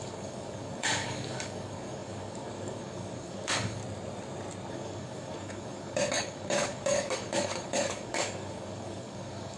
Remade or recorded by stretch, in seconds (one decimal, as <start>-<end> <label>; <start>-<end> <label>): 0.0-3.8 remade; 3.8-4.7 recorded; 4.7-9.6 remade